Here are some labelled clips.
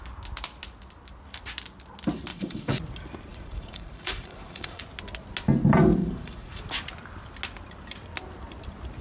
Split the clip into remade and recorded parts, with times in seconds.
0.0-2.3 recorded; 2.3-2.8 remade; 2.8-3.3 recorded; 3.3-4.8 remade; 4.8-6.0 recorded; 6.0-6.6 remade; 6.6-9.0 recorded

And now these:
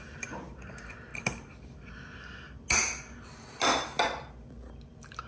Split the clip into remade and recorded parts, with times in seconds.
0.0-5.3 recorded

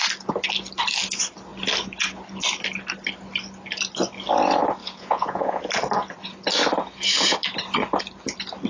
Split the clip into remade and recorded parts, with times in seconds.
0.0-4.8 recorded; 4.8-5.6 remade; 5.6-8.7 recorded